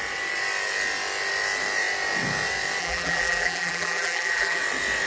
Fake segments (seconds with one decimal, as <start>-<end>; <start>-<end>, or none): 2.8-4.6